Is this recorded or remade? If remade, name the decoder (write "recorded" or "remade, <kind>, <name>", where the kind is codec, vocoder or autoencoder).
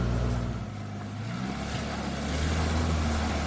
recorded